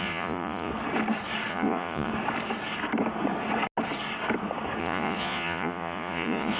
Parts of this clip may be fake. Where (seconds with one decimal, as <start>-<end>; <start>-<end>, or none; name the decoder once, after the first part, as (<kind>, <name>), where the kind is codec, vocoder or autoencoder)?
0.0-0.7 (vocoder, Vocos); 1.5-2.1; 4.8-6.6